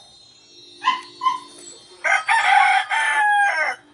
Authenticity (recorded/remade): recorded